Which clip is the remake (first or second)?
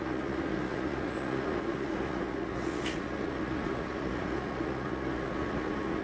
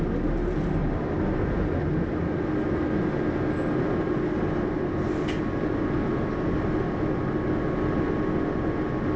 first